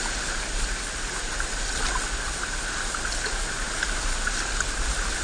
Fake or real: real